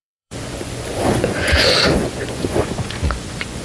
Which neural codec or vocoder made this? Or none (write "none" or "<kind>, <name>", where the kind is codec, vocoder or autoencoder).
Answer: vocoder, Vocos